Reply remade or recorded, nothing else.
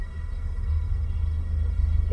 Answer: remade